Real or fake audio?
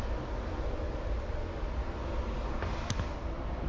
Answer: real